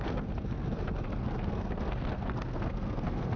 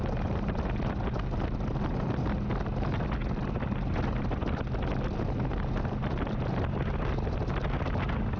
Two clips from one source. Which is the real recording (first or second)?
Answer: second